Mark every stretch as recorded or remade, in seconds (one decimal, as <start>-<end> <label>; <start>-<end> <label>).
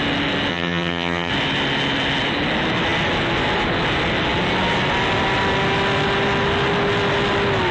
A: 0.0-0.5 recorded; 0.5-1.3 remade; 1.3-7.7 recorded